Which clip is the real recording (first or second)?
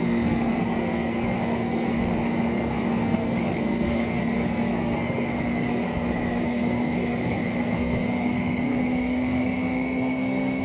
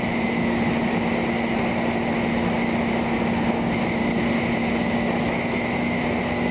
second